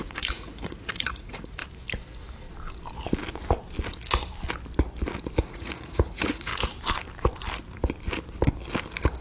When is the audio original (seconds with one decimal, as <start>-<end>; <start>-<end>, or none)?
1.6-5.4; 6.5-9.2